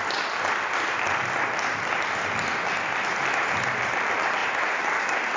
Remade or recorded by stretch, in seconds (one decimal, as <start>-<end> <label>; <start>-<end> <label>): 0.0-4.4 recorded; 4.4-5.0 remade; 5.0-5.4 recorded